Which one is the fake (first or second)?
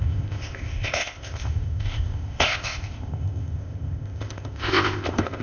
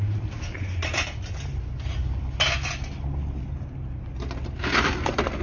first